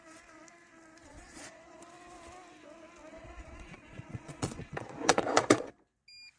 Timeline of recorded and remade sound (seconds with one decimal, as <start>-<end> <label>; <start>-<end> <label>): 0.0-1.0 recorded; 1.0-1.8 remade; 1.8-3.1 recorded; 3.1-5.7 remade; 5.7-6.4 recorded